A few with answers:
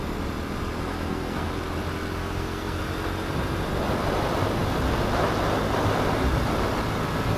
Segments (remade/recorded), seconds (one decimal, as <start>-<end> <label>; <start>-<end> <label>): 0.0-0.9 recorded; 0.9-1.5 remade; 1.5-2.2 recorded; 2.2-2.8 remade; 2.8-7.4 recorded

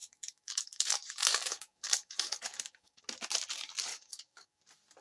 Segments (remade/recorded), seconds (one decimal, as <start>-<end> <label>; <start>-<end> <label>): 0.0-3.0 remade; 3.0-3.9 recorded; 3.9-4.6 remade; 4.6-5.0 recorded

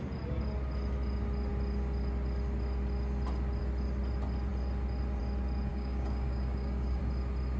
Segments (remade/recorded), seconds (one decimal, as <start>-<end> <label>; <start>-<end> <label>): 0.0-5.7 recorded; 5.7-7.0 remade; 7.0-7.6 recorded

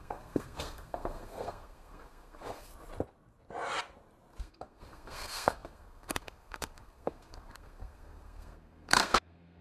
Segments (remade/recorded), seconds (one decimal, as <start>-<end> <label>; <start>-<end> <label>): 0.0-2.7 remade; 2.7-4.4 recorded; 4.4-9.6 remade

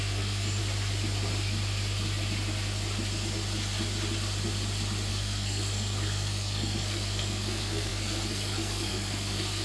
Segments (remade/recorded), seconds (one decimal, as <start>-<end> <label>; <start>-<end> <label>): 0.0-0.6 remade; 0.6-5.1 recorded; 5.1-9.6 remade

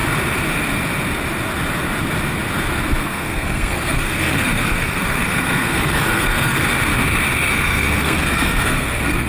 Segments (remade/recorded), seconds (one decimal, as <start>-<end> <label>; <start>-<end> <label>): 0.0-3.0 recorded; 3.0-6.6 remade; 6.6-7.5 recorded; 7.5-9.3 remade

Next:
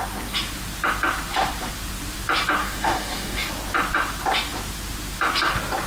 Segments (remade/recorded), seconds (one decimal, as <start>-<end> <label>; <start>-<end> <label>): 0.0-2.6 recorded; 2.6-3.5 remade; 3.5-5.9 recorded

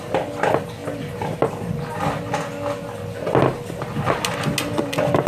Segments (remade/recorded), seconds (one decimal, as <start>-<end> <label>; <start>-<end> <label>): 0.0-5.3 recorded